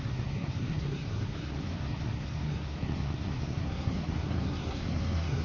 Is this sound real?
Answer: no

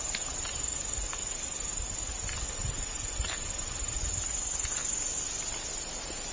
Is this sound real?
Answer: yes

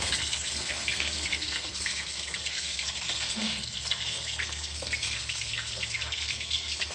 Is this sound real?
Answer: no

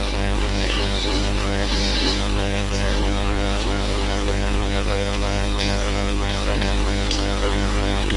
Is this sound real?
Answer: no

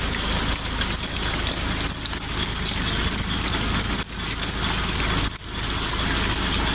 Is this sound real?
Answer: yes